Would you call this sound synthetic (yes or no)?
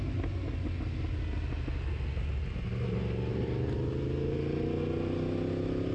no